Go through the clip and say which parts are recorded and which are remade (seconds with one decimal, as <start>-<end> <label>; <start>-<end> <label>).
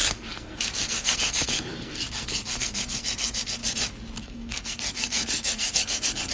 0.0-3.6 remade; 3.6-4.2 recorded; 4.2-6.3 remade